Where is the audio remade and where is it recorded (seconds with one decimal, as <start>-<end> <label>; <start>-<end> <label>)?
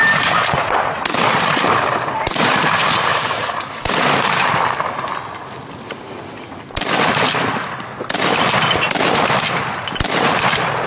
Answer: 0.0-0.8 remade; 0.8-3.1 recorded; 3.1-4.6 remade; 4.6-10.9 recorded